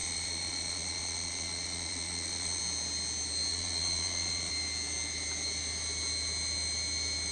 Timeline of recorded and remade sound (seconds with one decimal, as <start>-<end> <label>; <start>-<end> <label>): 0.0-2.6 remade; 2.6-3.5 recorded; 3.5-4.5 remade; 4.5-7.3 recorded